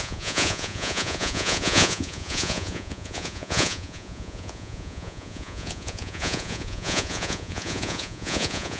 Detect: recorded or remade remade